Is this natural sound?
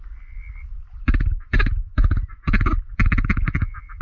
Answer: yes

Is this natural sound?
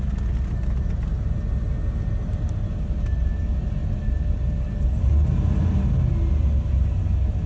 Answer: yes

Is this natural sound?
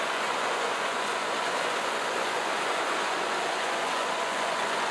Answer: no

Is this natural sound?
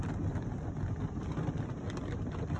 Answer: yes